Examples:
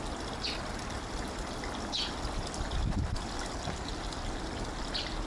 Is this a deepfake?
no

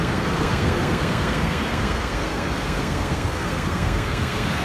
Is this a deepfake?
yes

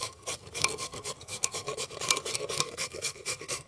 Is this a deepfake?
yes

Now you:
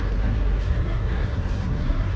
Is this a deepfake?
yes